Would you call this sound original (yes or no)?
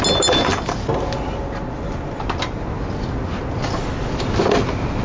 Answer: yes